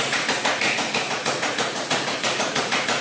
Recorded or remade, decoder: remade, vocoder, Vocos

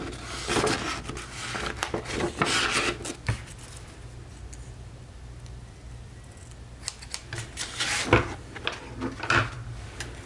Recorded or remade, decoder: recorded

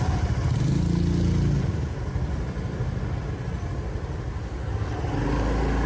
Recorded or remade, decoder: recorded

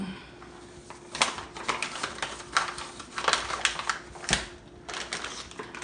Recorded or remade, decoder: recorded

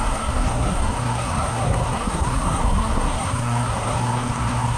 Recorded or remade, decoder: remade, codec, SNAC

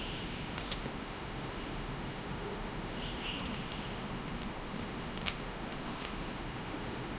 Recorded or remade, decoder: remade, autoencoder, DAC-VAE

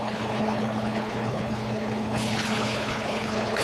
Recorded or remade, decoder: remade, codec, HILCodec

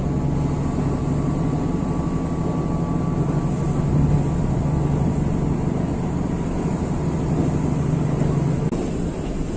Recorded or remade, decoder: recorded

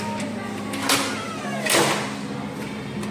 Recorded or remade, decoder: recorded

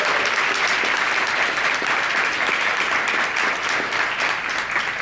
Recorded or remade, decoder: recorded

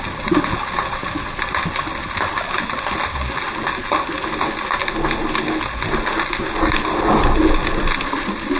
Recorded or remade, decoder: recorded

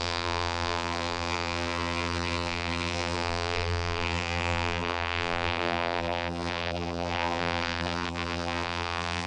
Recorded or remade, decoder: remade, vocoder, BigVGAN v2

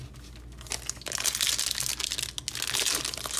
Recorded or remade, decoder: recorded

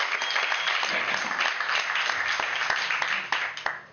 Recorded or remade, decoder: recorded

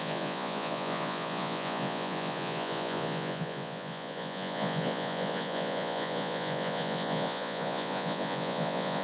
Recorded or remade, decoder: remade, vocoder, Vocos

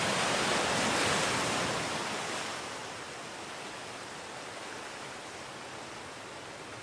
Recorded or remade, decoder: recorded